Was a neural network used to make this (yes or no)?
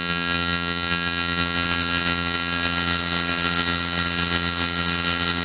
yes